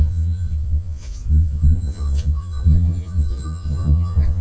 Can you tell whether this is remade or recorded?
remade